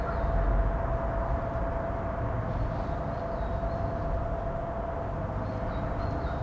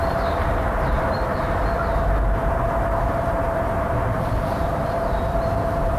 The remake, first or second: second